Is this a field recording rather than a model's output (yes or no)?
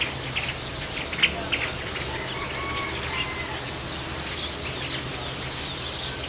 yes